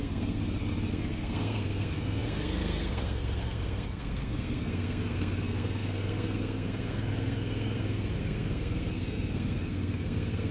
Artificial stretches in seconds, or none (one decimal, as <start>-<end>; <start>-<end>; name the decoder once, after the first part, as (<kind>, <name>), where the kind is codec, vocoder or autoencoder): 0.0-0.4 (codec, SNAC); 0.9-10.5